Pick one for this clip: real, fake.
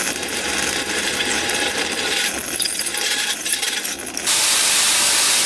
fake